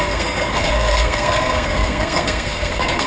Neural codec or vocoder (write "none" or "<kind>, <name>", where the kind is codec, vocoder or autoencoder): codec, SNAC